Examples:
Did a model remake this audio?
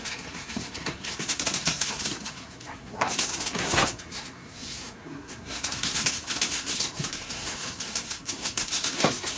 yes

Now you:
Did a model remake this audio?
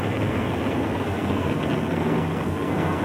yes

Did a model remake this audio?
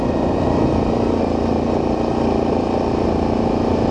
no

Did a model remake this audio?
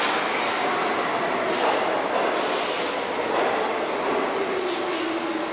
no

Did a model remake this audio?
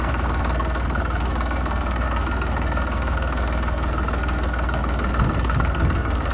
yes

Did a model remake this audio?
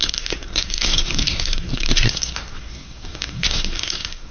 yes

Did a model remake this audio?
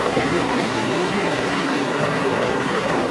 yes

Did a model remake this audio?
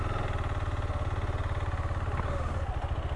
no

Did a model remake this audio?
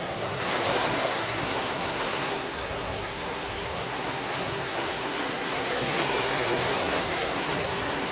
yes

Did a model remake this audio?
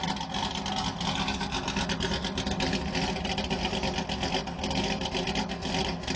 no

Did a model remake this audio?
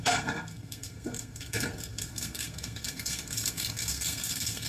yes